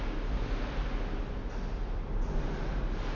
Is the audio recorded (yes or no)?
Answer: yes